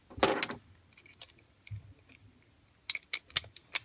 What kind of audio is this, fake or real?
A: real